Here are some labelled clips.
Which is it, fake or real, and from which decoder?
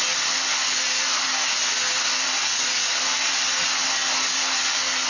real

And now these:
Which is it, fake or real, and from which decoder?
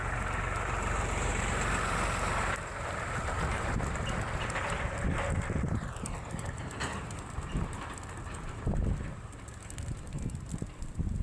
real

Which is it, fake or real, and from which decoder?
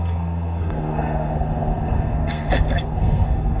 fake, codec, SNAC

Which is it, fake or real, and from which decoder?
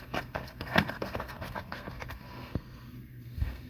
fake, codec, SNAC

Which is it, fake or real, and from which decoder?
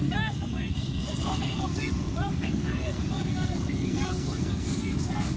fake, codec, SNAC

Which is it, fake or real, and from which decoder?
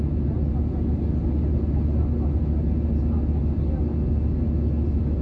real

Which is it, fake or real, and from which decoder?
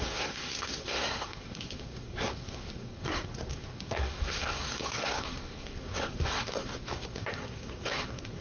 fake, codec, SNAC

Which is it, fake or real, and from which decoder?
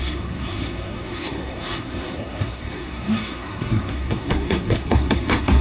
fake, codec, SNAC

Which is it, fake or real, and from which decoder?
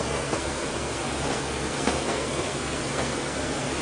fake, codec, SNAC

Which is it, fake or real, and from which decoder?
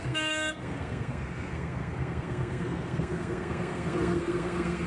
fake, codec, SNAC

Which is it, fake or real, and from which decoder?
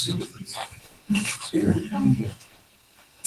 fake, codec, SNAC